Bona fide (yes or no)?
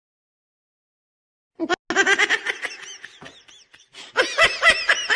yes